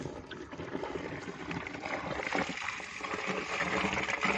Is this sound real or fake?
real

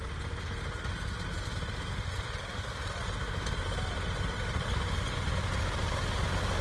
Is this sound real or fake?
real